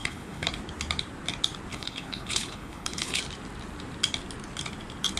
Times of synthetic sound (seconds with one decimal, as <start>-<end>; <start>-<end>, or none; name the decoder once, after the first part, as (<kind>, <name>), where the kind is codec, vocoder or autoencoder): 0.0-0.5 (codec, HILCodec); 1.7-3.2